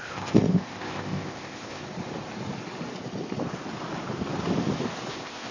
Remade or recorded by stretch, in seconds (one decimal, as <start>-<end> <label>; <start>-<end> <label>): 0.0-1.8 remade; 1.8-5.1 recorded; 5.1-5.5 remade